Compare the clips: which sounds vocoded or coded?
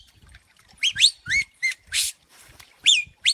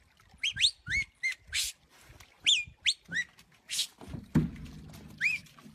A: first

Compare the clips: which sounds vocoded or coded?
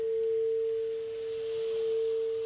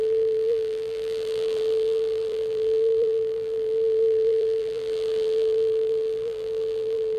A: second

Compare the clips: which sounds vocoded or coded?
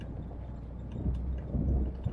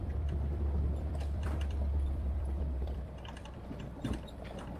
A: second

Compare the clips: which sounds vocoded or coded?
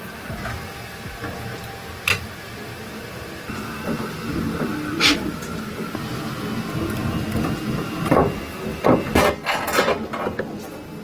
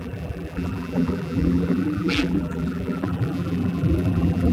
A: second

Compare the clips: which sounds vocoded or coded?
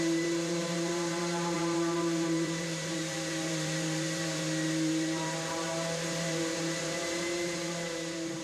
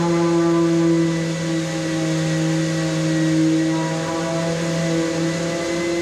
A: first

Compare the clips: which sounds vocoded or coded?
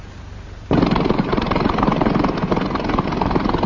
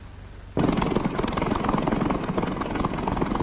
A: first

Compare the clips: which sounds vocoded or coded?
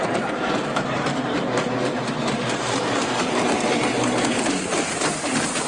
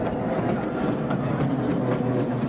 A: first